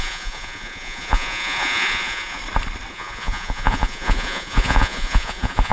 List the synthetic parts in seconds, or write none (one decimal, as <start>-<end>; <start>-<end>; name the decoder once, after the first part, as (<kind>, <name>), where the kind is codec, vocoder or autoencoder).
0.0-2.4 (vocoder, Vocos); 2.9-5.7